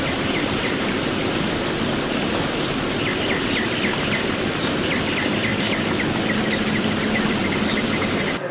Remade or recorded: recorded